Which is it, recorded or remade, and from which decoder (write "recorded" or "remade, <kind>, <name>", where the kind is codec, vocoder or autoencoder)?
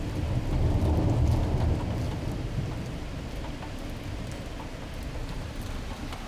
recorded